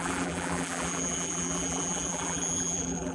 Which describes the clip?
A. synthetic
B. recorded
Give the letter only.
A